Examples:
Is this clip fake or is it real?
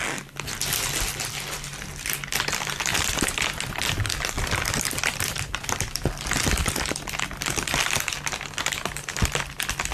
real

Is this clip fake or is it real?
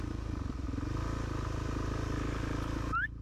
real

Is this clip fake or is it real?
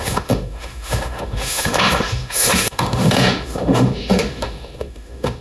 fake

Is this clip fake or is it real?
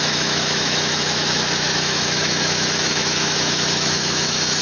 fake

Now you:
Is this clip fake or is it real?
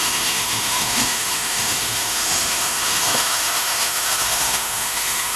fake